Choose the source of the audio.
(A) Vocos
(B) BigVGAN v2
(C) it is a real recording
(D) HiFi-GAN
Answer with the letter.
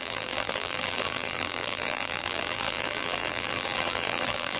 B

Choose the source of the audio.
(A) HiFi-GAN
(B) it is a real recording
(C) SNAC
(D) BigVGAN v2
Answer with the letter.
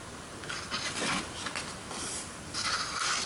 B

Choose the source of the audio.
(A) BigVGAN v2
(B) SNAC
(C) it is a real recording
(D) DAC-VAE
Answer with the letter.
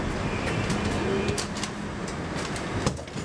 C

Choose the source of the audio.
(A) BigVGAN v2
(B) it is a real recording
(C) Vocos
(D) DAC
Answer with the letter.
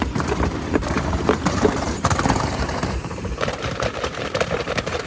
A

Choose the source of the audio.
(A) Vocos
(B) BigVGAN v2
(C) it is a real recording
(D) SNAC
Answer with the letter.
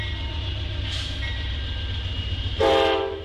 B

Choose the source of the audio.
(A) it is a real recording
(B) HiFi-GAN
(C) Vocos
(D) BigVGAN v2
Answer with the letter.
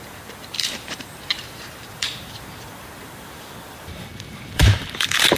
D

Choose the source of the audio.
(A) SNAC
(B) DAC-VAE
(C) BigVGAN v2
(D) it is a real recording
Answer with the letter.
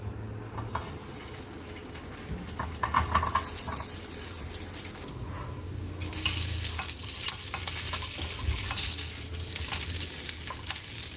D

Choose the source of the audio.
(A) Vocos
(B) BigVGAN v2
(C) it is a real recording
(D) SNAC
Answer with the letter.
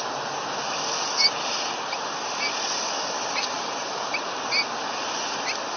C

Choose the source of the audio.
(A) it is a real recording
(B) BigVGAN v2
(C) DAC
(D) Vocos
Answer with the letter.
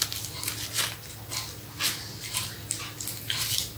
A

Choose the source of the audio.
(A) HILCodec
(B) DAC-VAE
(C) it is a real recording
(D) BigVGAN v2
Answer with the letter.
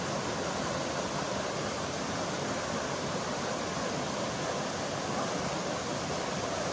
C